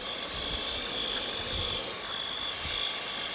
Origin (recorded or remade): recorded